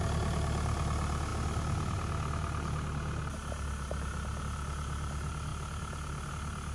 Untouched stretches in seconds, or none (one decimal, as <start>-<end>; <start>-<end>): 0.0-6.7